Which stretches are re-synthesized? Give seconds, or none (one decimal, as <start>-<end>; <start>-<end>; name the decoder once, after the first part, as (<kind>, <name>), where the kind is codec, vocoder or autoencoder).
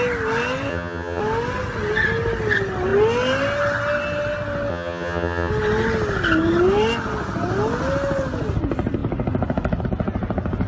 0.7-1.2 (vocoder, HiFi-GAN); 4.7-5.5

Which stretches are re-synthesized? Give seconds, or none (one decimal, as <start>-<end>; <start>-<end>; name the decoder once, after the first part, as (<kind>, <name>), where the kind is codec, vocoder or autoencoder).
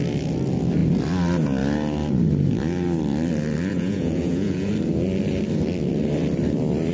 3.7-4.7 (vocoder, Vocos)